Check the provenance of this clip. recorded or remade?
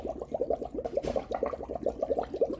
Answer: recorded